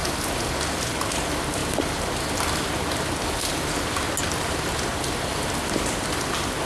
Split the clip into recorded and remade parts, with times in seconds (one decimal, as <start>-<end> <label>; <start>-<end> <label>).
0.0-6.7 recorded